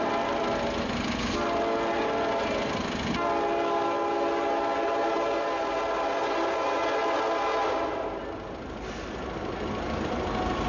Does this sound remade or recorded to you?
recorded